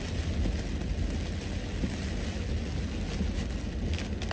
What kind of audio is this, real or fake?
real